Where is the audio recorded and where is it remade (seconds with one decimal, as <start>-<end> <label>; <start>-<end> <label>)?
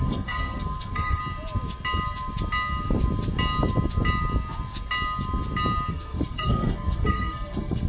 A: 0.0-1.2 remade; 1.2-5.9 recorded; 5.9-7.9 remade